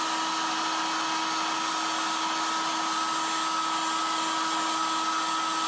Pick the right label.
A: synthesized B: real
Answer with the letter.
B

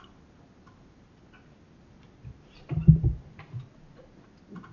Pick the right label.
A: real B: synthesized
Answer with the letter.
A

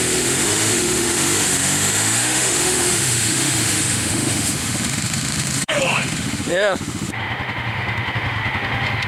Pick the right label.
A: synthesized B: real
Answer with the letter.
A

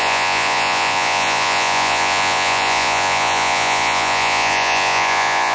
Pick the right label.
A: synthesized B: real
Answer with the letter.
A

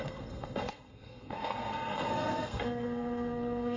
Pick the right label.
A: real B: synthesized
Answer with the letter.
B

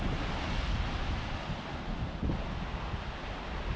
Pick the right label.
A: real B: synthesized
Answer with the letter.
A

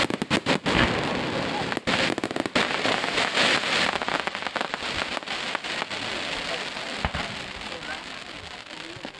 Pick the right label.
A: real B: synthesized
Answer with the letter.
A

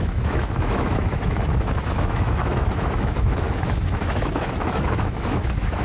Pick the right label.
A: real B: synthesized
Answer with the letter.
B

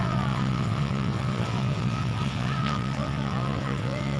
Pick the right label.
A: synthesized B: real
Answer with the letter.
A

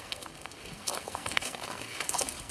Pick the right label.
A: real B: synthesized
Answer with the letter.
B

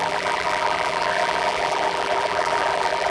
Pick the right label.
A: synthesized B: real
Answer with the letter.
A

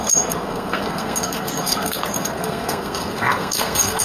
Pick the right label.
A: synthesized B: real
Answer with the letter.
A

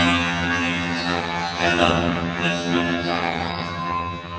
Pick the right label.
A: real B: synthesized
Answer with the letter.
B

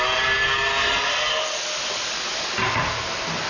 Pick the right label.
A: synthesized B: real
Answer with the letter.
B